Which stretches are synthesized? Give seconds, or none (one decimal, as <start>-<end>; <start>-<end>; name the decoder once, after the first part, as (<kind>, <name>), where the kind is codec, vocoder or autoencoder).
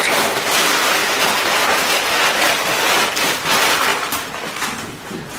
1.0-2.5 (vocoder, BigVGAN v2)